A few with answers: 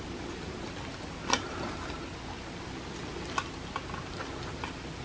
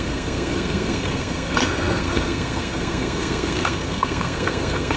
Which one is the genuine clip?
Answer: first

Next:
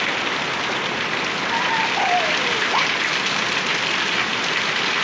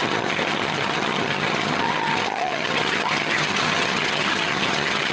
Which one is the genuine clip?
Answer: first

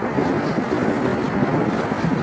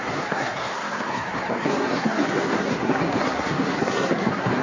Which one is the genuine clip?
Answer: first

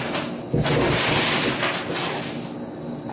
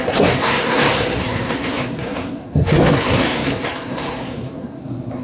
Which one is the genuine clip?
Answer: first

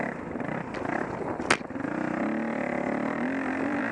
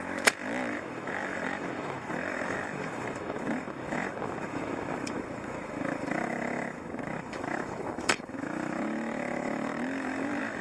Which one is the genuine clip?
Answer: first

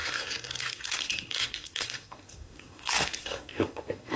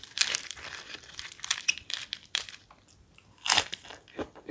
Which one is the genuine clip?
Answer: second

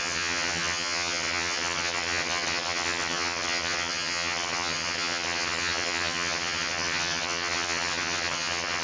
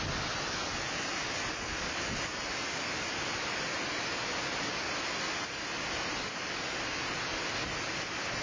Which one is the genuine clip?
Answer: second